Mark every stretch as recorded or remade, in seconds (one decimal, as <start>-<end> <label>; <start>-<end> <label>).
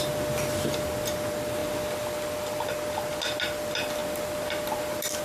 0.0-5.2 recorded